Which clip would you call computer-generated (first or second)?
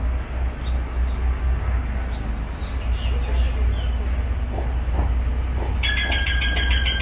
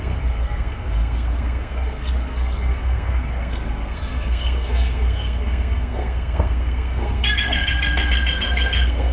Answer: second